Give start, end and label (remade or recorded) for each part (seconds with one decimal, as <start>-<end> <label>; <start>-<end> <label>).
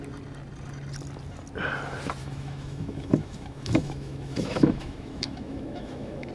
0.0-2.2 recorded; 2.2-6.3 remade